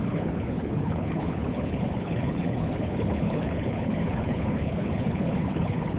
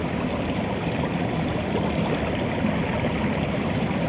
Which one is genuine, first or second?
second